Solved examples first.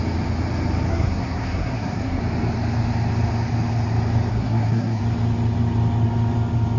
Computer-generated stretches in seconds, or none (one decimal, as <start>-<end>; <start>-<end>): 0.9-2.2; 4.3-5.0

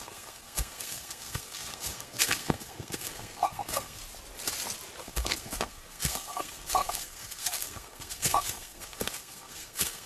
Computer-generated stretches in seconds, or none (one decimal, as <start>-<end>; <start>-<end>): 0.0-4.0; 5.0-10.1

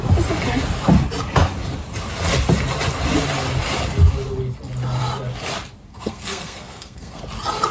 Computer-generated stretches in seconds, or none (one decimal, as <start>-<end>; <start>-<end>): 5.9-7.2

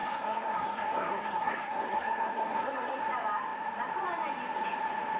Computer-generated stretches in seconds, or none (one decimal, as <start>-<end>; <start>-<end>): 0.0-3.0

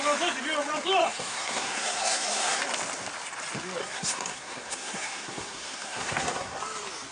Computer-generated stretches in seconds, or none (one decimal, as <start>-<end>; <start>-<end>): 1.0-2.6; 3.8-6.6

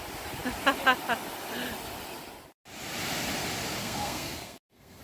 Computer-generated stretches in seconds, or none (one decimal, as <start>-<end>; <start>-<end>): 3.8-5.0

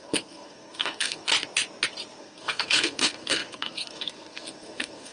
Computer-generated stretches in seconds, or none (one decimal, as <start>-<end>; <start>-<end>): 0.0-1.3; 2.2-5.1

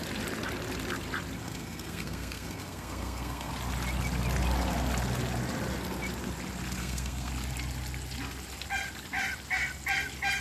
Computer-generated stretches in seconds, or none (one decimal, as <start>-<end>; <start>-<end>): 1.4-3.5; 6.8-7.3